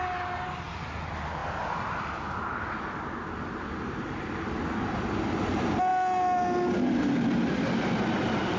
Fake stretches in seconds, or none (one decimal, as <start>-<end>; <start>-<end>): none